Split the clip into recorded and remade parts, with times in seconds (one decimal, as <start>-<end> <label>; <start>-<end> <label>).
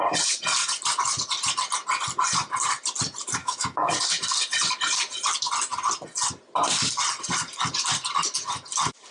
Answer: 0.0-3.4 recorded; 3.4-3.9 remade; 3.9-9.1 recorded